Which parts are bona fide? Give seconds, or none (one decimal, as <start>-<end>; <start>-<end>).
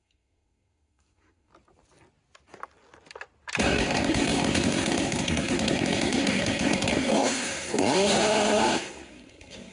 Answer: 1.5-3.6